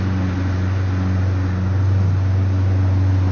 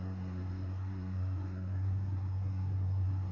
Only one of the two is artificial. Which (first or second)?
second